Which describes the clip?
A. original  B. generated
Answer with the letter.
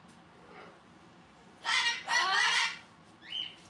A